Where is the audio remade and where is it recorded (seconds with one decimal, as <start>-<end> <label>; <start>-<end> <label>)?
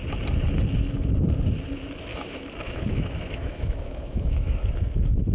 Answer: 0.0-2.1 recorded; 2.1-4.7 remade; 4.7-5.3 recorded